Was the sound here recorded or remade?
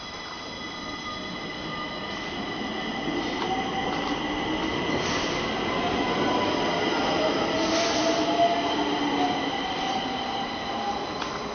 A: recorded